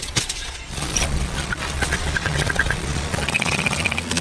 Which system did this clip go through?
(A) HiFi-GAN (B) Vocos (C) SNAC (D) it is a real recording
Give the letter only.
B